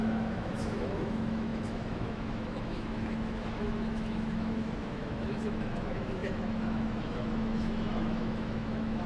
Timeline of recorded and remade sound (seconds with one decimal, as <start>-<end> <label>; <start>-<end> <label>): 0.0-9.1 remade